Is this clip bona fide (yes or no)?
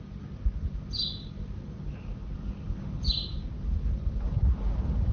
yes